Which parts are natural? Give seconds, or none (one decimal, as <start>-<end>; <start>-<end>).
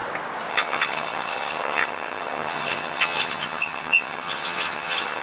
0.0-0.5